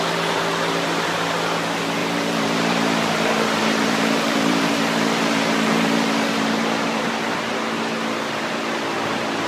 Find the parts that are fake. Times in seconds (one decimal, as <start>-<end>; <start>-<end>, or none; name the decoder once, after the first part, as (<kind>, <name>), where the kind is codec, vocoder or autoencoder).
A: 2.0-7.1 (vocoder, BigVGAN v2)